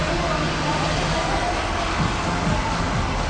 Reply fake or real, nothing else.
real